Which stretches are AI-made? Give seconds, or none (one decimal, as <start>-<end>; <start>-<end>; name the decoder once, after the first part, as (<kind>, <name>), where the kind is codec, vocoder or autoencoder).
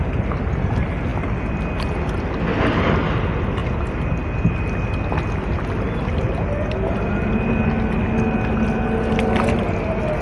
none